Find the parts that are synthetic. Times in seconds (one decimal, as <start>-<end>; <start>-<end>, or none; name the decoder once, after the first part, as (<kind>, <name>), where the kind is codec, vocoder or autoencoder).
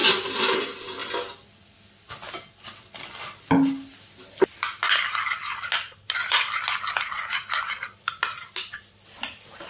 none